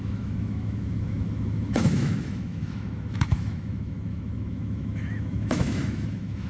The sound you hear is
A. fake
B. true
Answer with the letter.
A